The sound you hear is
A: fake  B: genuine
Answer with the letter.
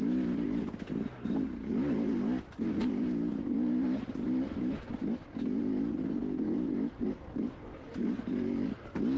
B